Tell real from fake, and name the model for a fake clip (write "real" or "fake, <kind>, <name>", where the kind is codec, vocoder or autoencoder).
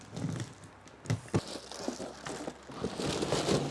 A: real